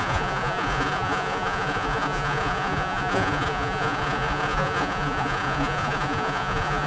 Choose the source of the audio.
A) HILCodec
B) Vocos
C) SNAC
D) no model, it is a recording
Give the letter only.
B